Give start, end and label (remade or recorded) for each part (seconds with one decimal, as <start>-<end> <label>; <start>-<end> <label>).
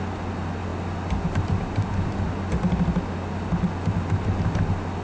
0.0-5.0 recorded